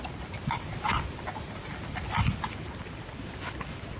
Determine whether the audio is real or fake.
real